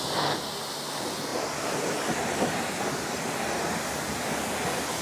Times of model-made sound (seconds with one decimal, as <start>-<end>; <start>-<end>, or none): none